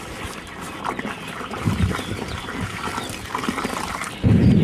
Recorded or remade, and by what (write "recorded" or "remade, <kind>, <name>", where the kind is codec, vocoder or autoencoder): recorded